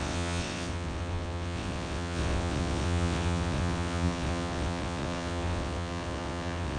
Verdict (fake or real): fake